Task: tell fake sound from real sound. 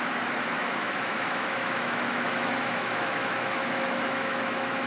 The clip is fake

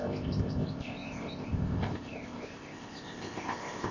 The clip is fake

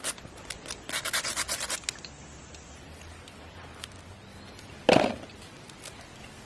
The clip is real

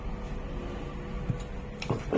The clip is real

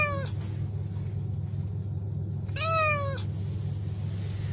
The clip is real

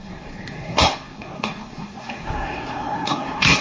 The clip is fake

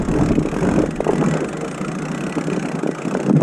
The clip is real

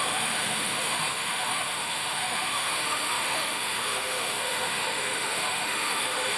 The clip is fake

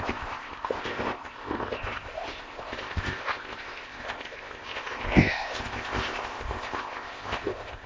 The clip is fake